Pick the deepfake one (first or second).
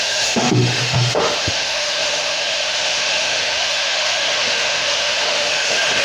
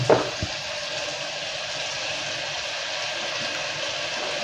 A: first